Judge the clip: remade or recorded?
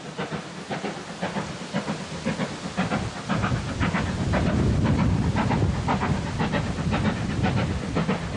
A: recorded